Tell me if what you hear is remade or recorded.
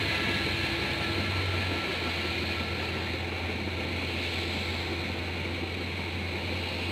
recorded